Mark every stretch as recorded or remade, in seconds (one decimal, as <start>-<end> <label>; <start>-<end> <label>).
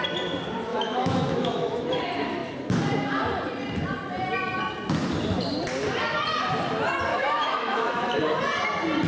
0.0-0.7 recorded; 0.7-2.0 remade; 2.0-7.1 recorded; 7.1-8.2 remade; 8.2-9.1 recorded